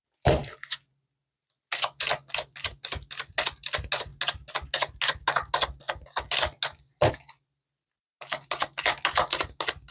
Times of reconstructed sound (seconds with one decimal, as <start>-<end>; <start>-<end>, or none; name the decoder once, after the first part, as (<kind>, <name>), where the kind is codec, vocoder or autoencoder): none